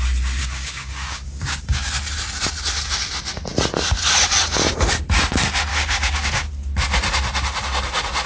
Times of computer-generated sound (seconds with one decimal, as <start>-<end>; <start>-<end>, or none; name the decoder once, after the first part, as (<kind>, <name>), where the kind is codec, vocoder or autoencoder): 0.4-1.9 (codec, DAC); 5.7-6.5